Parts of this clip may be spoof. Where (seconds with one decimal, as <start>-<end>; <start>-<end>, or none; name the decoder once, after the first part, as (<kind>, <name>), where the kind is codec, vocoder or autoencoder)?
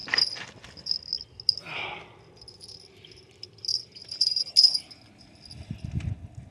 none